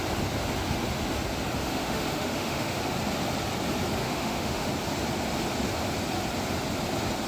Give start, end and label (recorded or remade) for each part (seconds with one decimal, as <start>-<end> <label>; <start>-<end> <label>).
0.0-1.6 recorded; 1.6-2.8 remade; 2.8-4.0 recorded; 4.0-4.7 remade; 4.7-7.3 recorded